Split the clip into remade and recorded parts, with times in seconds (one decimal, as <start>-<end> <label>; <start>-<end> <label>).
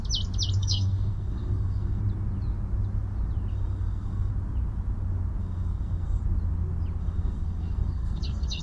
0.0-0.6 recorded; 0.6-2.0 remade; 2.0-3.5 recorded; 3.5-4.3 remade; 4.3-5.4 recorded; 5.4-6.2 remade; 6.2-7.0 recorded; 7.0-8.6 remade